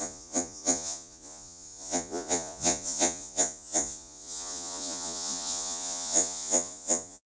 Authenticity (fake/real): fake